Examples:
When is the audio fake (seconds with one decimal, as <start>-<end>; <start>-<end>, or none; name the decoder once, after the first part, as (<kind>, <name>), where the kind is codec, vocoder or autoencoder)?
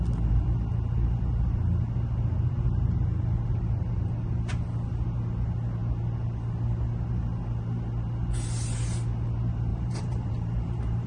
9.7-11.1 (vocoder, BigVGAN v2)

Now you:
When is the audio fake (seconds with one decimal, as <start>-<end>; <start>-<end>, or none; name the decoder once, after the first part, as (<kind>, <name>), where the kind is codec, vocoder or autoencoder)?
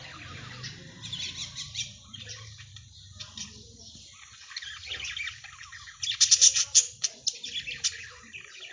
1.4-2.7 (vocoder, BigVGAN v2)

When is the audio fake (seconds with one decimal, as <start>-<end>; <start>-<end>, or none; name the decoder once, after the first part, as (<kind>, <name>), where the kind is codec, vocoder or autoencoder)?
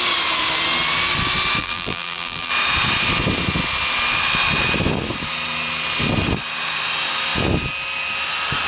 1.6-2.5 (vocoder, BigVGAN v2)